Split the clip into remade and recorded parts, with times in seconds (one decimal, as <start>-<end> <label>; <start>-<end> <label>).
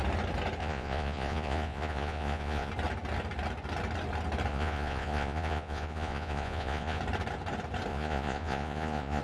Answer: 0.0-0.6 recorded; 0.6-2.7 remade; 2.7-4.5 recorded; 4.5-7.0 remade; 7.0-7.9 recorded; 7.9-9.2 remade